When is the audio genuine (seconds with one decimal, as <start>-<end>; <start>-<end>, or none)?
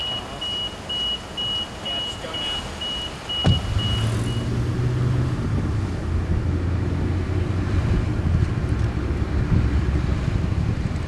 0.0-11.1